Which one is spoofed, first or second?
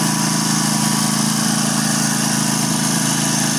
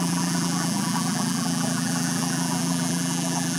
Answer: second